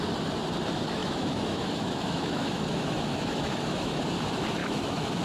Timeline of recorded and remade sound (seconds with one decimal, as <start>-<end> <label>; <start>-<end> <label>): 0.0-1.0 recorded; 1.0-4.0 remade; 4.0-4.6 recorded; 4.6-5.2 remade